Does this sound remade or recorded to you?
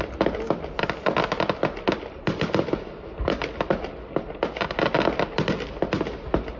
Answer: recorded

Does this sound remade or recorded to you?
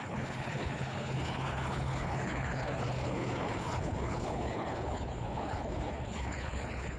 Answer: remade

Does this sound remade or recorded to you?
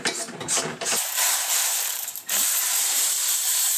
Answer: remade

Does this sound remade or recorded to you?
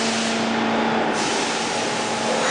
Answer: recorded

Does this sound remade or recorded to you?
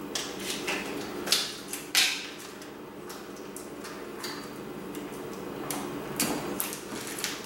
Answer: recorded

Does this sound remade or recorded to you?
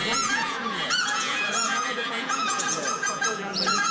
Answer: remade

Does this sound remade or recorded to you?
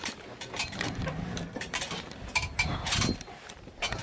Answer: remade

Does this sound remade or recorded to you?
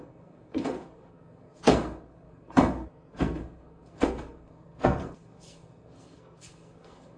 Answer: remade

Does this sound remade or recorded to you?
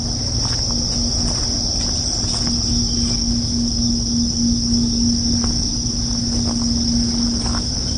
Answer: recorded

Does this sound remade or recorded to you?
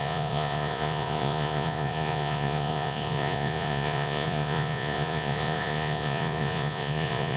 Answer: remade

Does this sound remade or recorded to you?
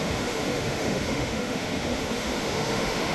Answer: remade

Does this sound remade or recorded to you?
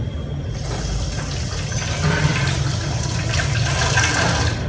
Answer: recorded